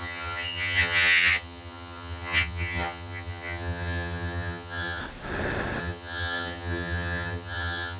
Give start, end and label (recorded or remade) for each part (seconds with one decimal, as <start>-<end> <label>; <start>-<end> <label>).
0.0-5.0 remade; 5.0-5.8 recorded; 5.8-8.0 remade

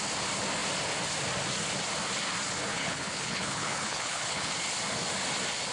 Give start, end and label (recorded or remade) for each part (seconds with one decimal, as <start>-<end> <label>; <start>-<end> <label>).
0.0-2.7 recorded; 2.7-4.5 remade; 4.5-5.7 recorded

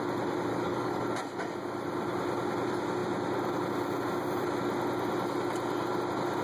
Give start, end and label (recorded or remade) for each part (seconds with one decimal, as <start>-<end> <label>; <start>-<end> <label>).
0.0-0.5 recorded; 0.5-1.0 remade; 1.0-6.4 recorded

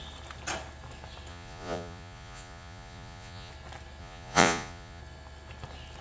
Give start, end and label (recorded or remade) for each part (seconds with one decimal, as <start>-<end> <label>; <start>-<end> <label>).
0.0-1.3 recorded; 1.3-3.5 remade; 3.5-4.0 recorded; 4.0-5.0 remade; 5.0-6.0 recorded

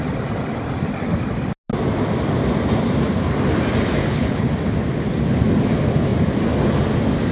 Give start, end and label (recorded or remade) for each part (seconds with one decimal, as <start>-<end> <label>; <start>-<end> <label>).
0.0-4.0 recorded; 4.0-4.5 remade; 4.5-7.3 recorded